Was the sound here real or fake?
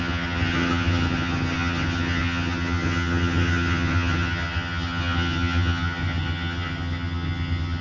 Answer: fake